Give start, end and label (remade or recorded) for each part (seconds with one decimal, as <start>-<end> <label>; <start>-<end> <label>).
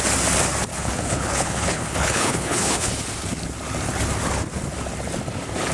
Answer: 0.0-0.7 recorded; 0.7-2.9 remade; 2.9-5.7 recorded